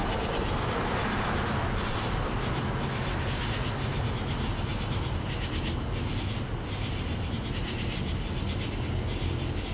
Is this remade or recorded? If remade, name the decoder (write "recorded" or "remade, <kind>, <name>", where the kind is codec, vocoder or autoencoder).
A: recorded